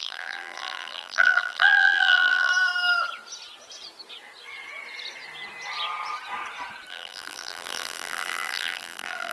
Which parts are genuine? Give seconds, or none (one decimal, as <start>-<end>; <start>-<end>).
2.5-6.9